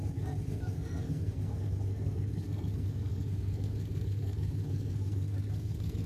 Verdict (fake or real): fake